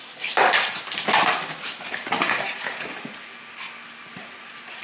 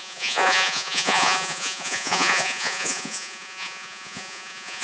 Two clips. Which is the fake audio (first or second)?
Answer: second